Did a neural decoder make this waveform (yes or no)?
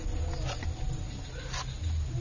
no